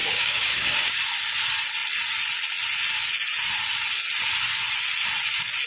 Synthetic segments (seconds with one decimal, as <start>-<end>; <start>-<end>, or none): 0.0-1.0